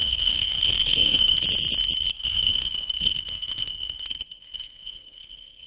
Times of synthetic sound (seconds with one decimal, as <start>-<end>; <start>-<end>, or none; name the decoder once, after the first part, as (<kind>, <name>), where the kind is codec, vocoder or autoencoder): 0.0-1.4 (codec, SNAC); 2.1-5.7